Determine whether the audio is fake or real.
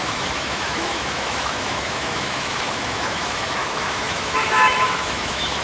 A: fake